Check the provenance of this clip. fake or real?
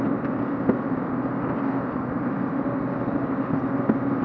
real